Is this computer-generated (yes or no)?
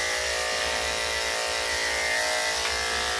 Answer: no